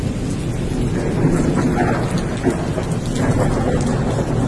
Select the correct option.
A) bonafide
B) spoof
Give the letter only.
A